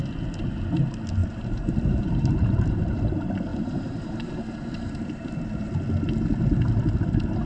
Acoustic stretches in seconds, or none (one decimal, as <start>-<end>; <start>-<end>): 0.0-1.2; 3.0-3.5; 5.7-7.5